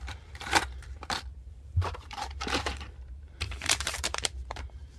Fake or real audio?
fake